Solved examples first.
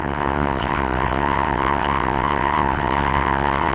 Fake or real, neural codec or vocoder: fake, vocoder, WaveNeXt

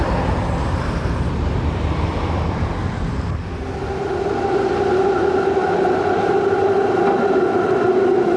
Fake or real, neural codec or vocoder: real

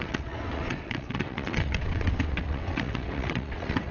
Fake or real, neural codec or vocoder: fake, vocoder, WaveNeXt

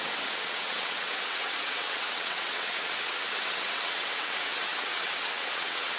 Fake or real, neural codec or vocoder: fake, vocoder, WaveNeXt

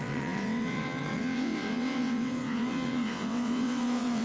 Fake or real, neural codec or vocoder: fake, vocoder, WaveNeXt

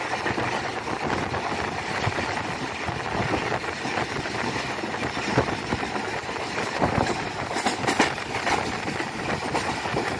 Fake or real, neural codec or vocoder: real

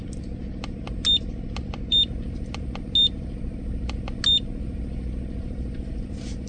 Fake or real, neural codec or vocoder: real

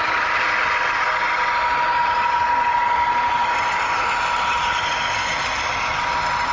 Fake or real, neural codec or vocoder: real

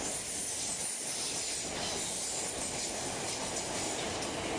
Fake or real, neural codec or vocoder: real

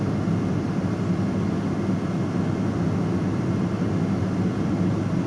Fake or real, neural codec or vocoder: real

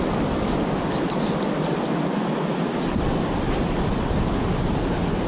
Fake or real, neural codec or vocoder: real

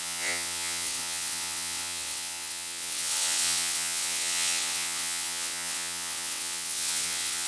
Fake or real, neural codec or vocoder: fake, vocoder, WaveNeXt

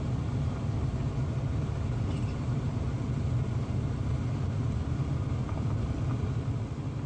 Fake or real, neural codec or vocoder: real